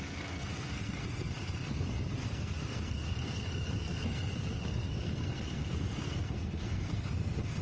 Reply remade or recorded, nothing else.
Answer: remade